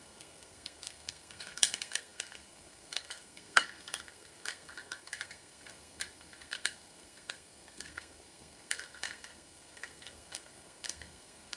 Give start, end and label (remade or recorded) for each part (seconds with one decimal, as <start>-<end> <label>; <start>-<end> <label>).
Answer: 0.0-11.6 remade

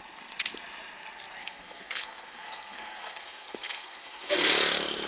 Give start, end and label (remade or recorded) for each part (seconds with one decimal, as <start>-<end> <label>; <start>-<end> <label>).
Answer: 0.0-1.4 recorded; 1.4-4.5 remade; 4.5-5.1 recorded

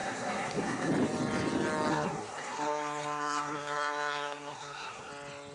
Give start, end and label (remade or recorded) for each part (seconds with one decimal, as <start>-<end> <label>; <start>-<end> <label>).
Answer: 0.0-0.9 remade; 0.9-1.9 recorded; 1.9-5.1 remade; 5.1-5.5 recorded

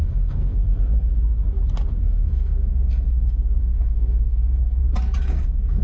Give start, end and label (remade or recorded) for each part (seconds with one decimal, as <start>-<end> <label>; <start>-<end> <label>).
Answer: 0.0-1.1 remade; 1.1-2.0 recorded; 2.0-4.8 remade; 4.8-5.3 recorded; 5.3-5.8 remade

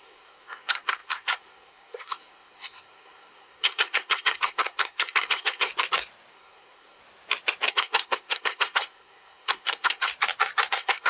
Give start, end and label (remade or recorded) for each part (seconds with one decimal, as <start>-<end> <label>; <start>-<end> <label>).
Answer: 0.0-5.7 remade; 5.7-6.3 recorded; 6.3-7.0 remade; 7.0-7.7 recorded; 7.7-10.1 remade; 10.1-10.7 recorded; 10.7-11.1 remade

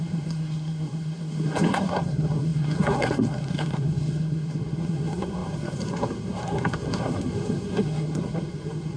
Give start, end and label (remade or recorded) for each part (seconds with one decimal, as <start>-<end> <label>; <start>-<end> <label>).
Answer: 0.0-9.0 remade

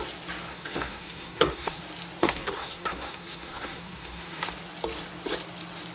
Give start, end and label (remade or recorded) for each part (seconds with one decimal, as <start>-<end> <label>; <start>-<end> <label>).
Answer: 0.0-0.5 recorded; 0.5-1.8 remade; 1.8-2.2 recorded; 2.2-4.4 remade; 4.4-5.9 recorded